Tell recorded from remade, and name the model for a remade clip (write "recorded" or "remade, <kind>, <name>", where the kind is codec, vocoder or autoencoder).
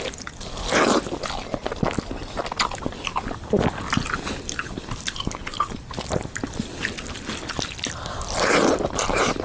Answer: recorded